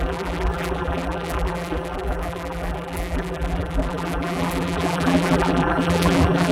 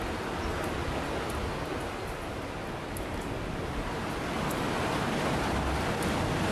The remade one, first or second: first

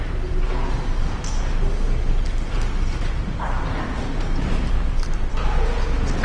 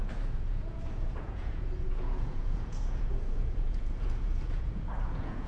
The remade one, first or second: second